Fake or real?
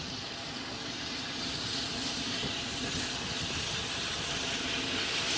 fake